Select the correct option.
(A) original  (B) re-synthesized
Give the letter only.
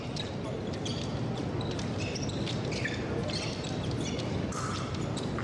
A